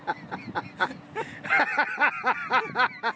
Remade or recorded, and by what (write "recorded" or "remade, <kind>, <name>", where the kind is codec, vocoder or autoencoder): recorded